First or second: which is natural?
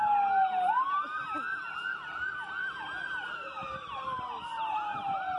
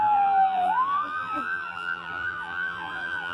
first